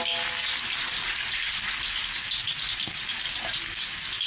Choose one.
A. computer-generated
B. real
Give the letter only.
B